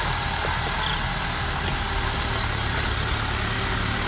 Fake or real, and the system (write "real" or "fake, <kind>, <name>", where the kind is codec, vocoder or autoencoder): real